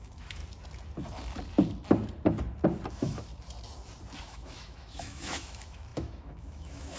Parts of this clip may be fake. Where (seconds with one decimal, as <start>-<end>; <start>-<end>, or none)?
0.0-0.4; 2.9-3.3; 4.2-7.0